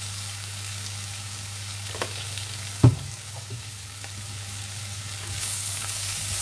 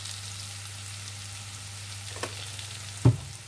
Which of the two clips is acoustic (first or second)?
second